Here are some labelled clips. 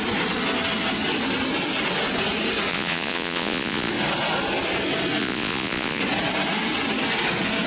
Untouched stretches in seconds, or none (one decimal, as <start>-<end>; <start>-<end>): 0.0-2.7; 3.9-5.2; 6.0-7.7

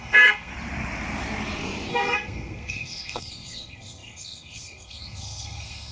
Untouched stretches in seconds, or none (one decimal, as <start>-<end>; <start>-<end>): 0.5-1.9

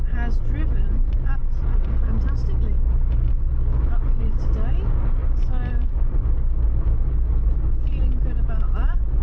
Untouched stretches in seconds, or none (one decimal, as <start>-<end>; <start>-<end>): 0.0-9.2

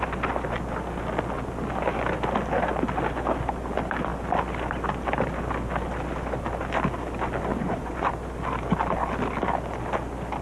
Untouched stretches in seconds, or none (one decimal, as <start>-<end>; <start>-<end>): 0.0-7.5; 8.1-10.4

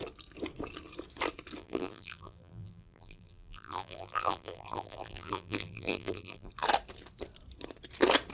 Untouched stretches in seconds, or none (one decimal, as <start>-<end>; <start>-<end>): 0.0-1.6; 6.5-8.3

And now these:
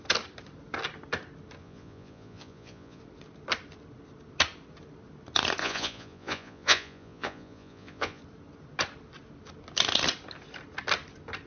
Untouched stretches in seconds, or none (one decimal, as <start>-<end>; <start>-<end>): 0.0-1.6; 3.0-5.6; 8.2-11.5

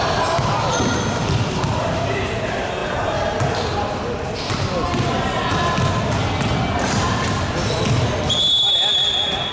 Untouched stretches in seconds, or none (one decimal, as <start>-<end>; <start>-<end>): 0.0-9.5